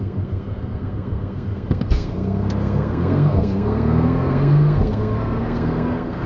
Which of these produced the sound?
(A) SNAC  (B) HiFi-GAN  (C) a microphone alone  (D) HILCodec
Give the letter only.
A